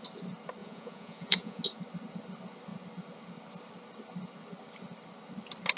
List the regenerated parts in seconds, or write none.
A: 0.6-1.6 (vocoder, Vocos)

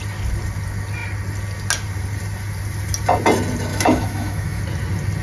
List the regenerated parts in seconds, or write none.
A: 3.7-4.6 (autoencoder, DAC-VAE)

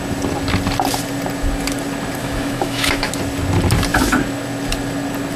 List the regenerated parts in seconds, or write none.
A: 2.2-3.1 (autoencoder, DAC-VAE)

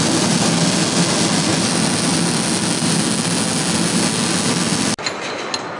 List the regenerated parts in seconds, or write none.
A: none